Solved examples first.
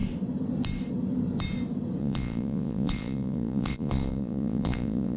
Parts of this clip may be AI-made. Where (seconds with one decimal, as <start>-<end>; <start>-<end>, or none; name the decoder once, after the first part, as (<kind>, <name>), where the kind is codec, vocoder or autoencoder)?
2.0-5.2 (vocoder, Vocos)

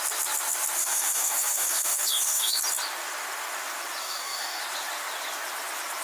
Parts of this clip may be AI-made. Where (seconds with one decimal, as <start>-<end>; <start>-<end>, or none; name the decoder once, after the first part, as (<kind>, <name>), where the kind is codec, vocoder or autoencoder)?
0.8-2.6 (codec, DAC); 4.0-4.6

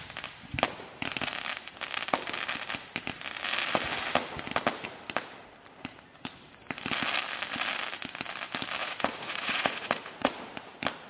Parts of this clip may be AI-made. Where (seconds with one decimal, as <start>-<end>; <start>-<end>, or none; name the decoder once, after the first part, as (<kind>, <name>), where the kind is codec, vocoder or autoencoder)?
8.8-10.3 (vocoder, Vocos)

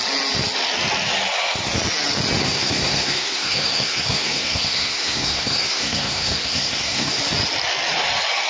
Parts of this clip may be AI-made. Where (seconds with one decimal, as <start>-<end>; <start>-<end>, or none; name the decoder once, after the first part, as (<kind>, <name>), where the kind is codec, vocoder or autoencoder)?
2.4-7.2 (codec, SNAC)

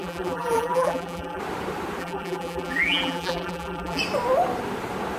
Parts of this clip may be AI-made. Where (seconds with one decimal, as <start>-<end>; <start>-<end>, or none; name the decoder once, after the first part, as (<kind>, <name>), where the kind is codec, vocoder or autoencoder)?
0.0-1.4 (vocoder, BigVGAN v2); 2.0-4.0

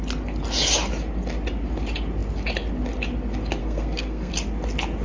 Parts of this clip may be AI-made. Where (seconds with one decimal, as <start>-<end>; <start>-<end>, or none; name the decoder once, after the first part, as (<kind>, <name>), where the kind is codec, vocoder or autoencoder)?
3.6-4.3 (codec, SNAC)